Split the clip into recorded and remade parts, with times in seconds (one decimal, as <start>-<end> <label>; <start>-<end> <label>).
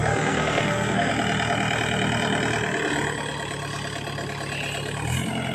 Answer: 0.0-1.1 remade; 1.1-5.5 recorded